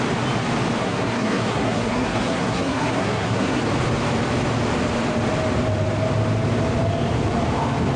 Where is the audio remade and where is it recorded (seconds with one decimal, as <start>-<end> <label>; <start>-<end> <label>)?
0.0-0.8 recorded; 0.8-3.6 remade; 3.6-8.0 recorded